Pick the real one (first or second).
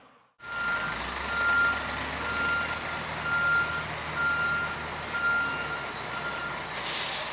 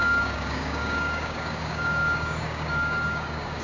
first